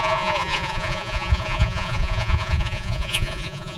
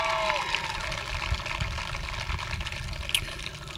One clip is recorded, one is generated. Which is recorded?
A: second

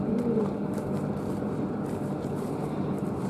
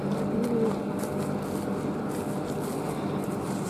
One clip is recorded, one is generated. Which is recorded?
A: second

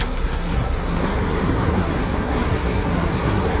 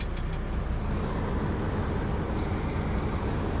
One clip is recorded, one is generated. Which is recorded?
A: second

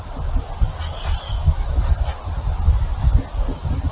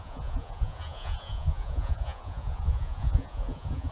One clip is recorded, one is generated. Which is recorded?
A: first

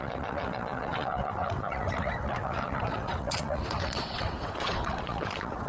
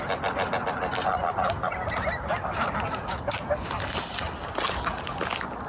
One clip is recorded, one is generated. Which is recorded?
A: second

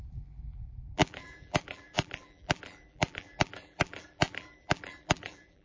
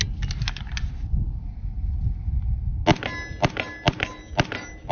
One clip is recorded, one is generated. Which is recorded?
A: second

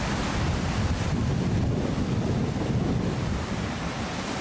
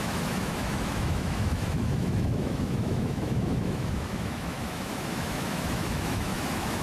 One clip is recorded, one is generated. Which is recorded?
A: first